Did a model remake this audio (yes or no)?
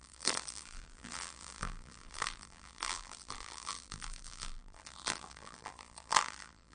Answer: yes